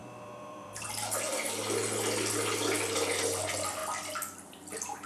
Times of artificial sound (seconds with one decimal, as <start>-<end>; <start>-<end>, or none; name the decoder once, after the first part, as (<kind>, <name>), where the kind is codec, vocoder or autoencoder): 0.0-0.9 (vocoder, BigVGAN v2)